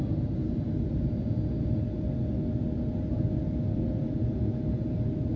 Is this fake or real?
real